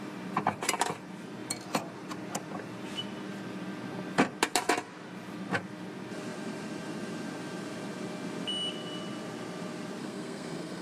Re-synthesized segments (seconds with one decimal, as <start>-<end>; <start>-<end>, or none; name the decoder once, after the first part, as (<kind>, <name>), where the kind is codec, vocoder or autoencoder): 10.0-10.8 (codec, SNAC)